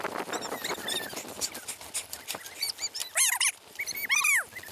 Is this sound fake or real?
real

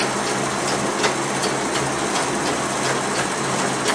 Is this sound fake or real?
real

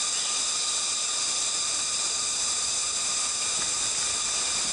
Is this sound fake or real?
real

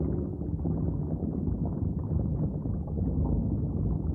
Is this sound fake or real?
real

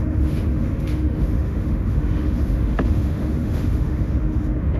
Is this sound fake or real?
fake